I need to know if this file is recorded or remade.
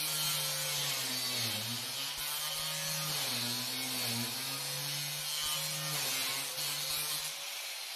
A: recorded